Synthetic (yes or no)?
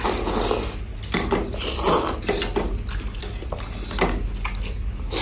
no